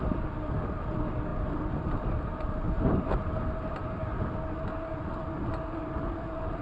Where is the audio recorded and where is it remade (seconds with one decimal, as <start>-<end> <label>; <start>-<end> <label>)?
0.0-4.1 remade; 4.1-4.9 recorded; 4.9-6.6 remade